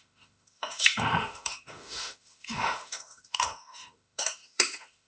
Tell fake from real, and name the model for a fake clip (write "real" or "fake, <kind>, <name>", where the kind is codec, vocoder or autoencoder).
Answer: fake, autoencoder, DAC-VAE